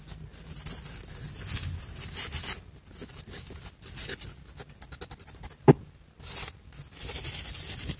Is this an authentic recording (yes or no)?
yes